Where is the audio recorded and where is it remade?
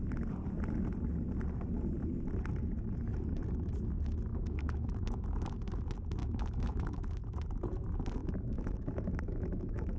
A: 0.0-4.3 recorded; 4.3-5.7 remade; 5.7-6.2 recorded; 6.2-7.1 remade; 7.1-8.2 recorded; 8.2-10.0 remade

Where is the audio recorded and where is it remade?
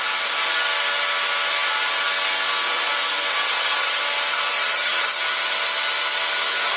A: 0.0-3.3 recorded; 3.3-4.0 remade; 4.0-4.6 recorded; 4.6-5.2 remade; 5.2-6.8 recorded